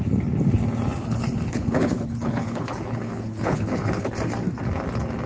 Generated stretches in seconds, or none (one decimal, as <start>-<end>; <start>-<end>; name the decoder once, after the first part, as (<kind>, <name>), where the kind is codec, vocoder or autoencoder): 1.0-4.1 (codec, HILCodec)